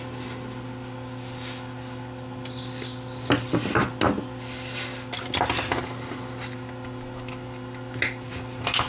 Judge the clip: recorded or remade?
recorded